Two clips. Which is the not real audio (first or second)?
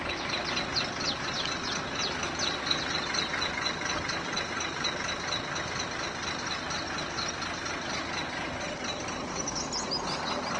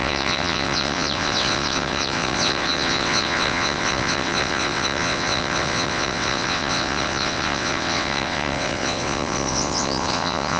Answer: second